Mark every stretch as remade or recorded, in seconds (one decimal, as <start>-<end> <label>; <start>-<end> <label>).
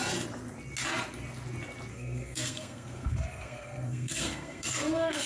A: 0.0-1.9 recorded; 1.9-5.3 remade